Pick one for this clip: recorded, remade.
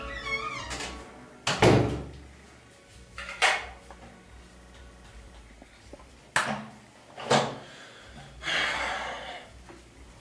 recorded